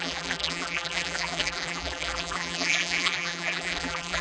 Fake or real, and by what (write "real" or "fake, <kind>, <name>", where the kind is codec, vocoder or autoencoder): fake, vocoder, BigVGAN v2